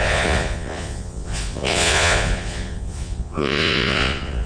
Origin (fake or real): fake